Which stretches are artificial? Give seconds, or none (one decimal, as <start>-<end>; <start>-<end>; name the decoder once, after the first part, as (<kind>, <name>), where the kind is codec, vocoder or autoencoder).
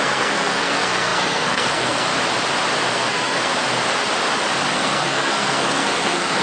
0.0-2.1 (codec, SNAC); 2.9-3.5; 4.7-6.4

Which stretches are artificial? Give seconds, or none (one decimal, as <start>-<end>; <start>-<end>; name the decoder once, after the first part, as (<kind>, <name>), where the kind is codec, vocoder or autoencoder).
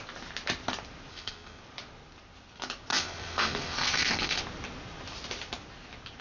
1.1-1.6 (codec, SNAC); 2.9-4.4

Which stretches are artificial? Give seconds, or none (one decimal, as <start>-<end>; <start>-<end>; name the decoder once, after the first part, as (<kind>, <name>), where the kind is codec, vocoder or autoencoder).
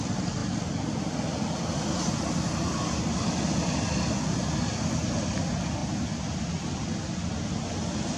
none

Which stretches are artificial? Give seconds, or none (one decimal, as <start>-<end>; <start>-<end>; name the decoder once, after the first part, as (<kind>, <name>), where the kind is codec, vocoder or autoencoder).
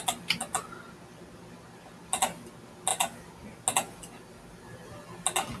none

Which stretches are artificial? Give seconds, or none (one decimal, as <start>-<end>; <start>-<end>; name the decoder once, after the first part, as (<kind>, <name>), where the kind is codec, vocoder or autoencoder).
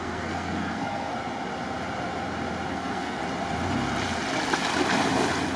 0.0-1.1 (codec, SNAC); 2.7-3.2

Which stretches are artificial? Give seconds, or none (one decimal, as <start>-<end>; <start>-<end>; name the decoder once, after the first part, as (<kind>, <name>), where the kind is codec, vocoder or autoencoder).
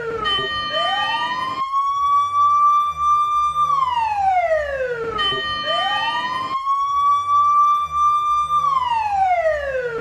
none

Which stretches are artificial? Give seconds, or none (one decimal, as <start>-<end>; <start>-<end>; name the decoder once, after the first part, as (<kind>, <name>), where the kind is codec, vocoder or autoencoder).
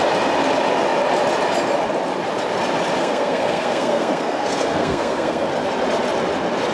3.0-5.5 (codec, SNAC)